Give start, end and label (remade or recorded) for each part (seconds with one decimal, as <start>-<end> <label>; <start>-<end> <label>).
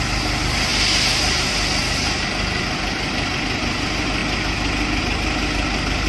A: 0.0-6.1 recorded